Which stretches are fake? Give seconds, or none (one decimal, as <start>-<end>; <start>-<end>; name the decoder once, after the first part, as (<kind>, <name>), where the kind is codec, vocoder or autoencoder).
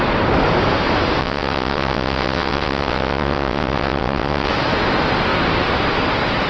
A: 1.2-4.5 (vocoder, WaveNeXt)